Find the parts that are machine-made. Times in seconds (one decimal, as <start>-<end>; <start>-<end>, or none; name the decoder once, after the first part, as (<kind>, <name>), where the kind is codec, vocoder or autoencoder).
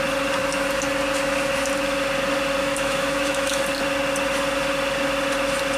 2.6-3.6 (autoencoder, DAC-VAE)